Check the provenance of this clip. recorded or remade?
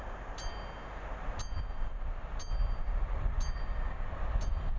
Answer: recorded